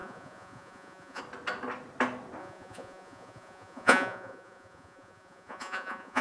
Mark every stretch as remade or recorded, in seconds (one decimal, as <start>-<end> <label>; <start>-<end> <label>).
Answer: 0.0-1.2 remade; 1.2-2.4 recorded; 2.4-6.2 remade